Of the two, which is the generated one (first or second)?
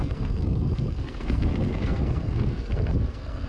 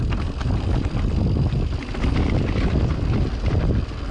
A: first